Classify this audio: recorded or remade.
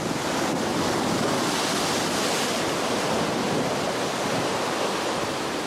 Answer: recorded